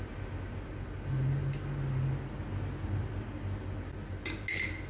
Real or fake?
real